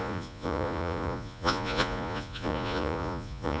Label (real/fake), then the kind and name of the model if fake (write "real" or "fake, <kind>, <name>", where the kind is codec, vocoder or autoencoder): fake, vocoder, Vocos